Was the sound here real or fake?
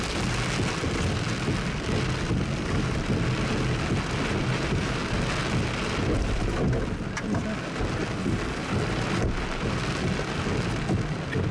real